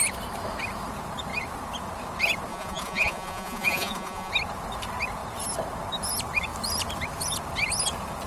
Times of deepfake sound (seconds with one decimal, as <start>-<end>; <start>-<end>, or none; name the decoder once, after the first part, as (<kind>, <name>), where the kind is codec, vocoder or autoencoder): 2.5-4.3 (vocoder, Vocos)